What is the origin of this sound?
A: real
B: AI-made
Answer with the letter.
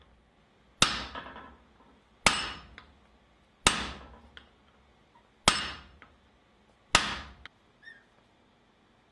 A